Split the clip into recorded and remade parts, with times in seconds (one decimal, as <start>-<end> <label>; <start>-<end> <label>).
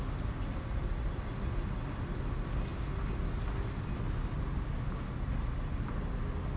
0.0-6.6 recorded